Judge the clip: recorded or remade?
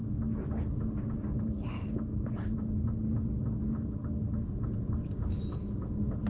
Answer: recorded